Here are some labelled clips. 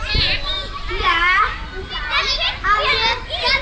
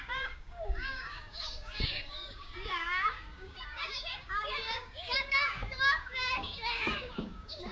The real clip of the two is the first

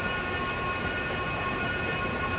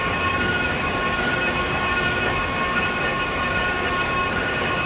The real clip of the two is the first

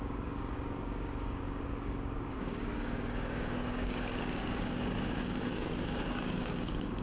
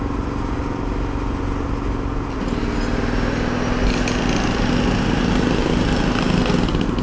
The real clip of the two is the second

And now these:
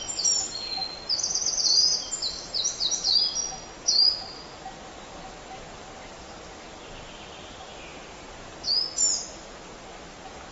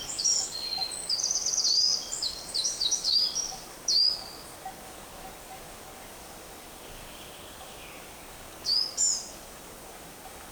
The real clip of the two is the first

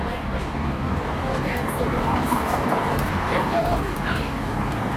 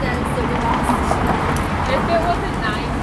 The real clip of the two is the second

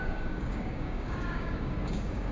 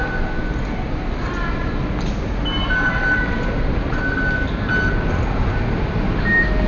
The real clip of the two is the second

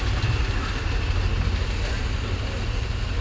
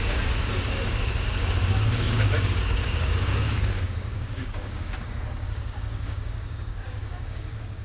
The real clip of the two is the first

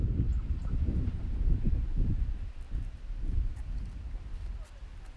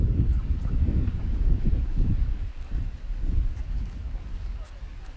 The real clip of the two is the first